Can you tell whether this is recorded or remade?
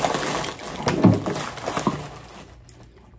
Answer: recorded